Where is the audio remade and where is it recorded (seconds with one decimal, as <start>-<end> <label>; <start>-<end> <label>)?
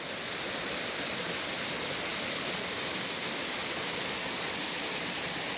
0.0-5.6 recorded